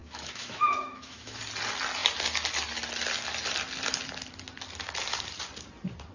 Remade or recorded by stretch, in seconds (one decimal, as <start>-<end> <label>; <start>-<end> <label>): 0.0-1.4 remade; 1.4-6.1 recorded